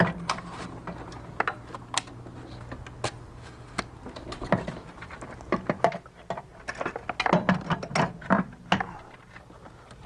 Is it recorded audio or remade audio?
recorded